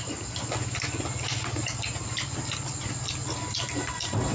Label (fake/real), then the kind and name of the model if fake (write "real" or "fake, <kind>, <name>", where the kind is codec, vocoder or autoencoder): real